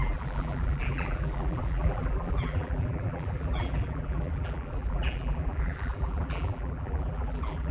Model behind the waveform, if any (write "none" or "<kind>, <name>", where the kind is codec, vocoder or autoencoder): vocoder, BigVGAN v2